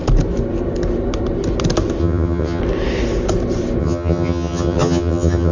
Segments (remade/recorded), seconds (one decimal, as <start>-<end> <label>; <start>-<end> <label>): 0.0-2.0 recorded; 2.0-2.6 remade; 2.6-3.8 recorded; 3.8-5.5 remade